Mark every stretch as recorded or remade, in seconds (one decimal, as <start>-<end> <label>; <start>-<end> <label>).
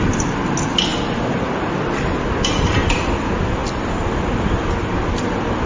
0.0-5.7 recorded